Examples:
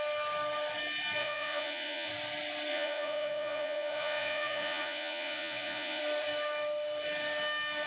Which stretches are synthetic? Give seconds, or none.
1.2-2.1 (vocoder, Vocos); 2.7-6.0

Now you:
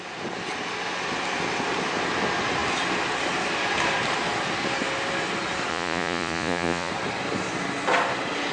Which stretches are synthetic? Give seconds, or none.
5.7-6.9 (vocoder, Vocos)